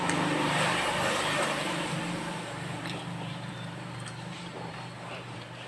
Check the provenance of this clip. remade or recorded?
remade